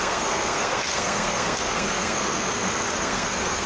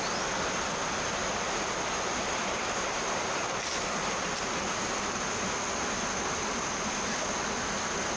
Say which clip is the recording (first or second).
second